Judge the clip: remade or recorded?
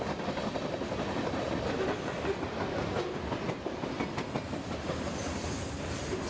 recorded